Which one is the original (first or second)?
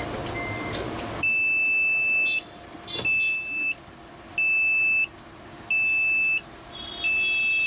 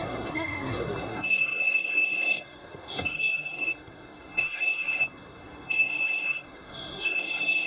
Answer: first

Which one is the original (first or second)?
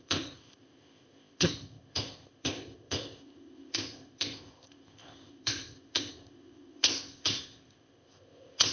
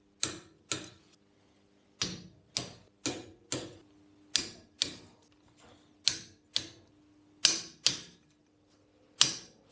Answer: second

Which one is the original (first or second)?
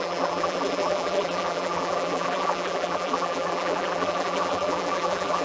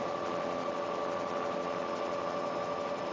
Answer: second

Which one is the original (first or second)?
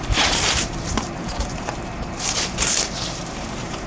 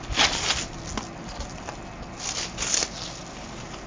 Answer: second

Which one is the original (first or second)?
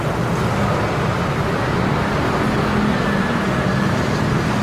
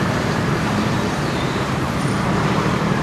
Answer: first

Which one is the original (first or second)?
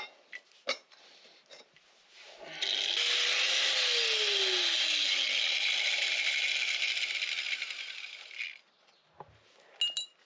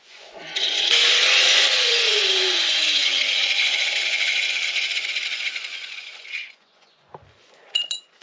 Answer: first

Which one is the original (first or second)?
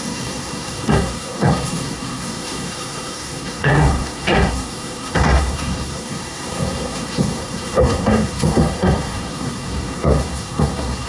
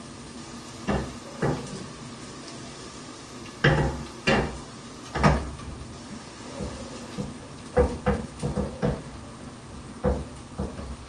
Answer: second